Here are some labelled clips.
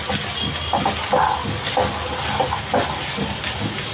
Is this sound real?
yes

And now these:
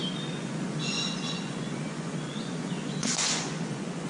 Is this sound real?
no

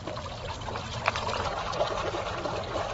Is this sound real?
yes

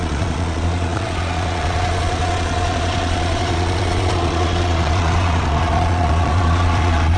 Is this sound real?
no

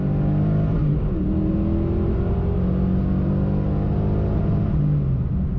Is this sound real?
yes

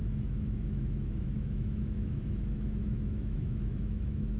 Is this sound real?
no